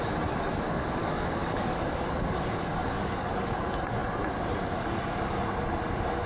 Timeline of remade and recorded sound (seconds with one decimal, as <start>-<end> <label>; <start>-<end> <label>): 0.0-1.0 recorded; 1.0-2.0 remade; 2.0-2.8 recorded; 2.8-3.5 remade; 3.5-6.3 recorded